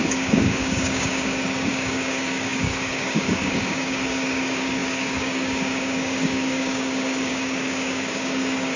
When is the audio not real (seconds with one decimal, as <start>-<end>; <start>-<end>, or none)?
0.0-8.8